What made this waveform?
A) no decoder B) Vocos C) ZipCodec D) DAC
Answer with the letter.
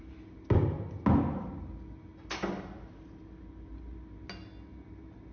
A